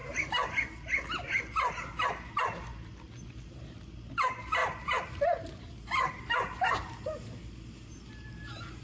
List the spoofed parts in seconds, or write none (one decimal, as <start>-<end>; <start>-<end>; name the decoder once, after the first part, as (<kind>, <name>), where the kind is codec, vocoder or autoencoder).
none

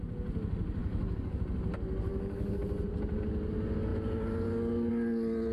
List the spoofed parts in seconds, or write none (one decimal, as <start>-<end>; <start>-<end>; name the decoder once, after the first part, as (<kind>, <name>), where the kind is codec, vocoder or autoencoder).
0.8-1.4 (codec, DAC); 2.1-2.6

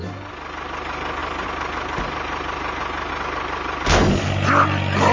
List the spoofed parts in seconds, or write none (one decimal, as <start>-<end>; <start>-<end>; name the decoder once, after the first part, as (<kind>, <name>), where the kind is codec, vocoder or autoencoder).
none

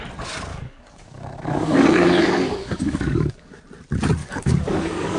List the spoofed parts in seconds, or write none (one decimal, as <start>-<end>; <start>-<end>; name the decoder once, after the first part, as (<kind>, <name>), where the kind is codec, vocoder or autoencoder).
0.5-3.6 (codec, DAC); 4.2-5.2